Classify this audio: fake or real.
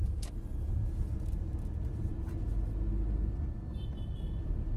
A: real